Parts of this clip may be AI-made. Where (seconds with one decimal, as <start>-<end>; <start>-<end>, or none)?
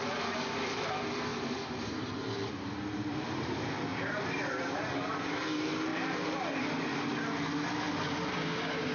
1.3-2.5; 3.9-5.4; 5.9-6.6